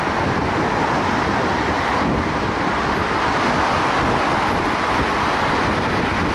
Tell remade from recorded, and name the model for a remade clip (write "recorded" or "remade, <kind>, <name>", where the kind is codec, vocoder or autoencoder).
recorded